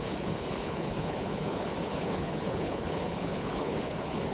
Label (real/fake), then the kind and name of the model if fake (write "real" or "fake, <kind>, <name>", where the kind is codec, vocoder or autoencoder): fake, codec, HILCodec